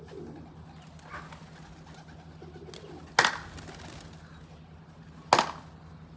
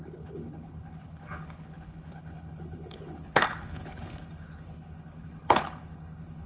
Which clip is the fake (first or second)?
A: second